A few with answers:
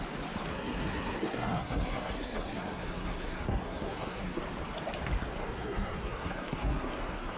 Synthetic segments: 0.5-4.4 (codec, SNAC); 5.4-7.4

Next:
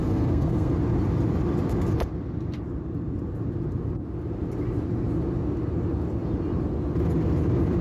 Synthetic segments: 0.0-0.7 (codec, SNAC)

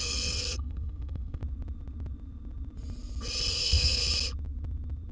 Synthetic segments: 0.0-1.4 (codec, SNAC); 3.5-4.0

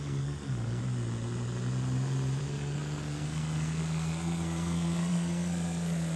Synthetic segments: 0.0-0.8 (codec, SNAC); 2.4-6.2